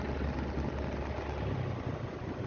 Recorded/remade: recorded